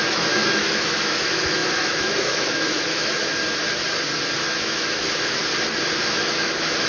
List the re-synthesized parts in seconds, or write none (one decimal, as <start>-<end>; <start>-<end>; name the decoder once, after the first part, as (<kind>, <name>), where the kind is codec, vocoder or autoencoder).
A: 0.0-3.4 (autoencoder, DAC-VAE); 4.6-5.4; 6.0-6.9